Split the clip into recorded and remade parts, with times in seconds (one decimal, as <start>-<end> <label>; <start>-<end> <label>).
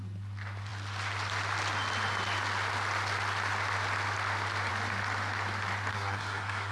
0.0-5.9 recorded; 5.9-6.7 remade